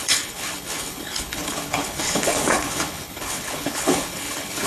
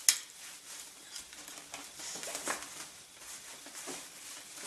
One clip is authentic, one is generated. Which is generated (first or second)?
first